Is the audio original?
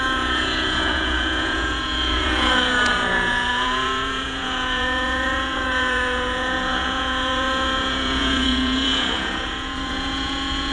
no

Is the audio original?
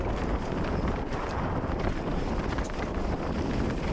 no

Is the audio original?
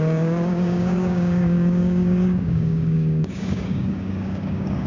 no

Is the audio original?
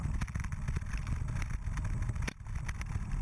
yes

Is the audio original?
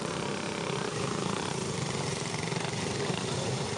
no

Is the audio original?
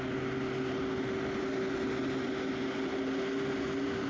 yes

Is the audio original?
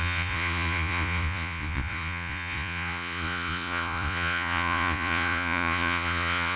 no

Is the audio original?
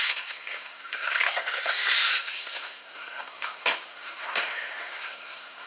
no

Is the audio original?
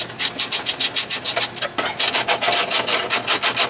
yes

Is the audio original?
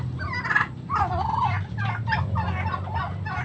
yes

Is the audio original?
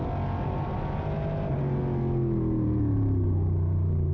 yes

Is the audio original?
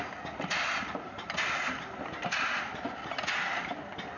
yes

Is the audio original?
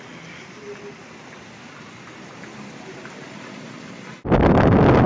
yes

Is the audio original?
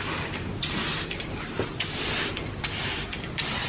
yes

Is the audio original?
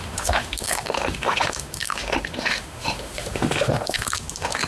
no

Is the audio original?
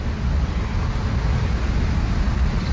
yes